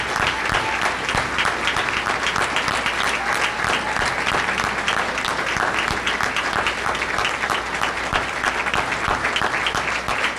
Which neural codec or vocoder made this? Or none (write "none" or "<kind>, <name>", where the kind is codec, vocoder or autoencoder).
none